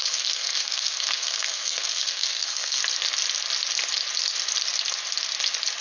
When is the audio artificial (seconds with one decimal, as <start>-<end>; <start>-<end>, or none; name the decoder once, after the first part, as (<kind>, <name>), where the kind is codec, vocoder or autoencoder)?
0.0-2.8 (codec, SNAC)